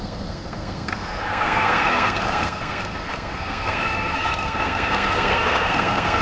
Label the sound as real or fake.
fake